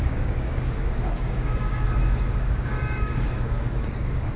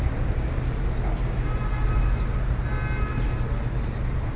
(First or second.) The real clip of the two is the second